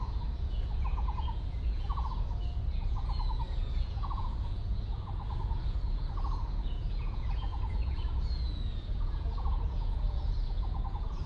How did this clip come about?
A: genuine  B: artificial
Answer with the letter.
B